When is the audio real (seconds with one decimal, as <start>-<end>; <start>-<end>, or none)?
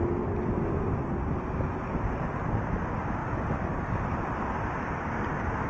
0.0-5.7